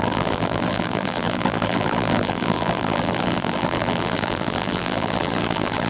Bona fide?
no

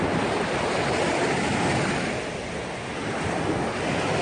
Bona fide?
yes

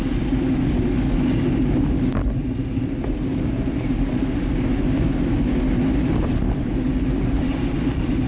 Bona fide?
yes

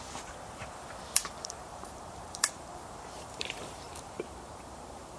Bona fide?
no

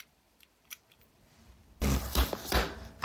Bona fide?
no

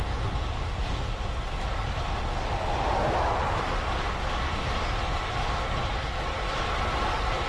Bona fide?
yes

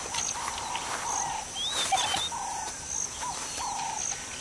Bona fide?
yes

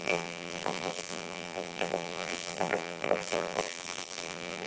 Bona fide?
no